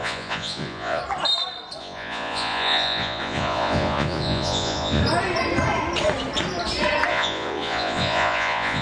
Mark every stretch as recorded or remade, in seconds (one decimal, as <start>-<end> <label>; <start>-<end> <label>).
0.0-1.0 remade; 1.0-1.8 recorded; 1.8-5.0 remade; 5.0-7.1 recorded; 7.1-8.8 remade